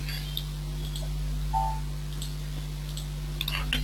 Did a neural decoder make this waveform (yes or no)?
no